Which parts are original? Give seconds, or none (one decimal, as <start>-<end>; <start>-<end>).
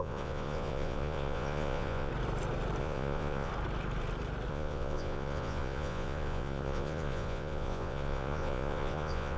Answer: 2.1-2.8; 3.5-4.5